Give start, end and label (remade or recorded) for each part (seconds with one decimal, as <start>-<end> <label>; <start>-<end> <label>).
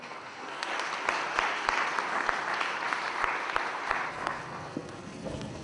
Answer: 0.0-0.7 remade; 0.7-4.1 recorded; 4.1-5.6 remade